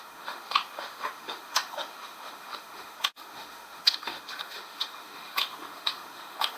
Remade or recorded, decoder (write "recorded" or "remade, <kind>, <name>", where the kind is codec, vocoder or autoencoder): remade, autoencoder, DAC-VAE